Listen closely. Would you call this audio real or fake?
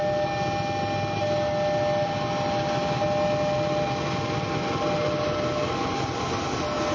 real